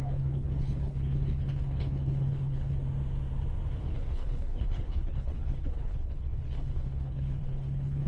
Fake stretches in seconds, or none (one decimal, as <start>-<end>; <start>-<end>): 0.0-2.8; 3.8-8.1

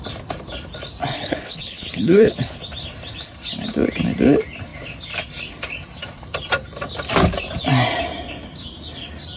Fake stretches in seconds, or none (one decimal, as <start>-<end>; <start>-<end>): 1.1-2.6

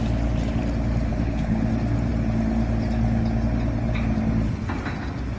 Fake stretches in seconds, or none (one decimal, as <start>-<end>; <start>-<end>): 1.1-1.7

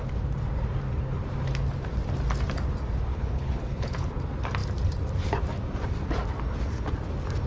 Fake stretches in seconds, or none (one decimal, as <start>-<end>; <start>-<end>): 3.1-4.1

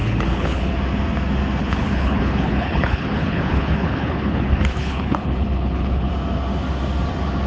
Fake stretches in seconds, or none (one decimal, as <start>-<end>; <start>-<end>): 0.0-0.7; 1.6-6.1